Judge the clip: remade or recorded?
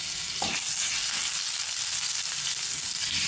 recorded